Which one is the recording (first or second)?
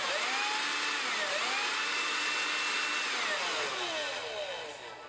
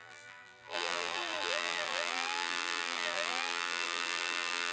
first